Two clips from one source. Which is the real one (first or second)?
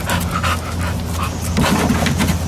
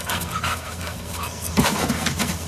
first